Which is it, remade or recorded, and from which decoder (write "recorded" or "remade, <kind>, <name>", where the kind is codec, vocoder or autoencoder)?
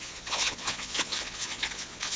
remade, vocoder, Vocos